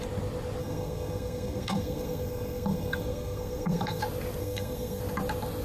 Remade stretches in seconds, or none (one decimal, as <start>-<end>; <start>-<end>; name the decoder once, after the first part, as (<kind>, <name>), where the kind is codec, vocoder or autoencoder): 0.6-4.0 (codec, SNAC); 4.4-5.0